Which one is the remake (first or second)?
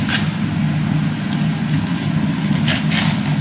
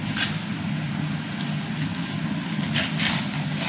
second